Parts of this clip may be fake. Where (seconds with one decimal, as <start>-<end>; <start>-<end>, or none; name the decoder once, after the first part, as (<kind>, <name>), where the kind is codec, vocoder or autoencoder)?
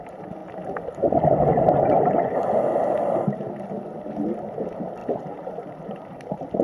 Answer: 0.0-0.4 (vocoder, BigVGAN v2); 4.4-6.6